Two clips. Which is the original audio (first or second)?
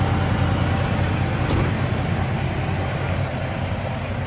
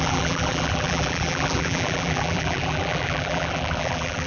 first